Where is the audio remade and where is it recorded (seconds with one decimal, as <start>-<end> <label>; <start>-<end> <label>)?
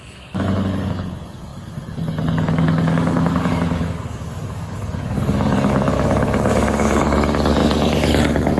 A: 0.0-8.6 remade